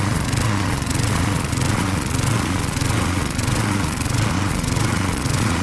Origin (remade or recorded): remade